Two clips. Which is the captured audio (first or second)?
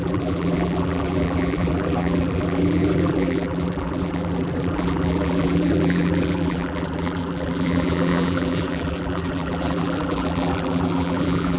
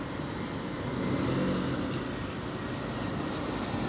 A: second